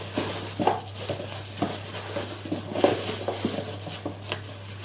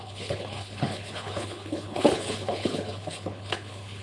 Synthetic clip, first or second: second